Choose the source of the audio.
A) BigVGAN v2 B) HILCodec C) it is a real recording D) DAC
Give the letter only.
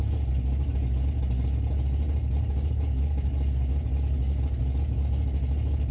C